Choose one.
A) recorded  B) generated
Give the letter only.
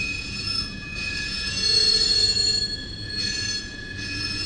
B